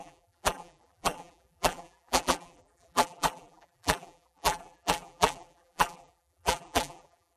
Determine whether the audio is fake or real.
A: fake